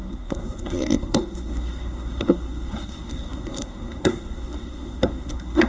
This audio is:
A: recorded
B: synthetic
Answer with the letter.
B